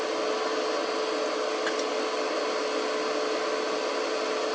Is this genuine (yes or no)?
yes